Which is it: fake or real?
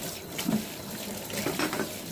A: real